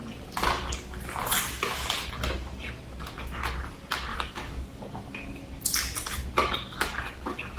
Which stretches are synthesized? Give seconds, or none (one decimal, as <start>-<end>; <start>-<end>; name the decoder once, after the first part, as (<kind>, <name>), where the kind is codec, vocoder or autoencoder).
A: 4.1-5.4 (codec, DAC); 6.4-7.6